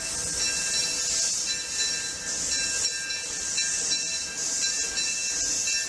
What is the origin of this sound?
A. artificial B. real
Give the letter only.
B